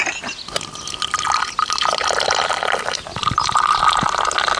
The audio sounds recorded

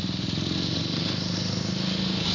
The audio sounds recorded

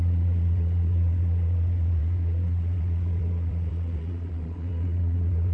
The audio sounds remade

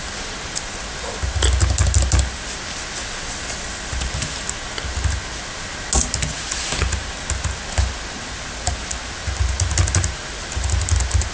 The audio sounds recorded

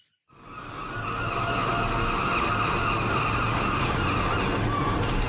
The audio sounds recorded